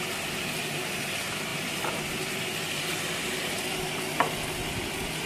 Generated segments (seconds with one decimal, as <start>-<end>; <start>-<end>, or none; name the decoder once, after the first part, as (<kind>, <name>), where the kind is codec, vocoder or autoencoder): none